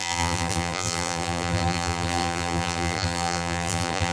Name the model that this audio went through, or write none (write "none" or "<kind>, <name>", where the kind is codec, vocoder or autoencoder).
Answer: vocoder, BigVGAN v2